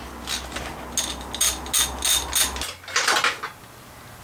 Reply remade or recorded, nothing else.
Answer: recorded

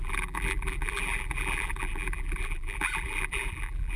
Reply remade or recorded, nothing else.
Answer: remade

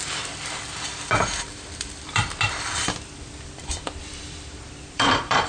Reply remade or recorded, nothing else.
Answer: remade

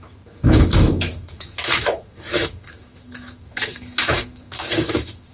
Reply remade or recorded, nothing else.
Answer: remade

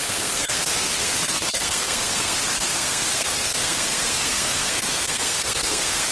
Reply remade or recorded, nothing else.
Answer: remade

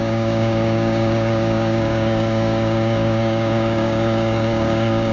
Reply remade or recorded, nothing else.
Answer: remade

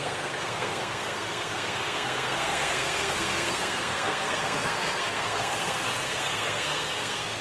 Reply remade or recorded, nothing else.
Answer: remade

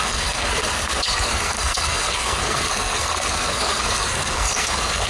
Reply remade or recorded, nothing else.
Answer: remade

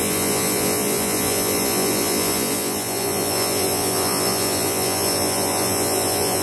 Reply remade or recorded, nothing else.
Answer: remade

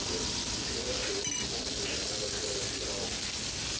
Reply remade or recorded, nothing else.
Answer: recorded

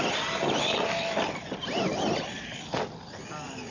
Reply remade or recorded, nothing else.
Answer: recorded